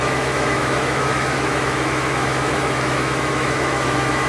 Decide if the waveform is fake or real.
fake